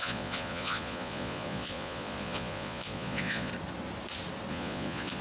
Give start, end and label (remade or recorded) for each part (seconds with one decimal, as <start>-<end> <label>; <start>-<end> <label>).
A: 0.0-3.5 remade; 3.5-4.5 recorded; 4.5-5.2 remade